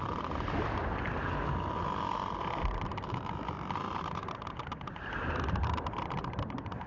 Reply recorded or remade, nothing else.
recorded